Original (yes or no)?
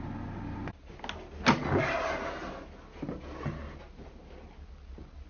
yes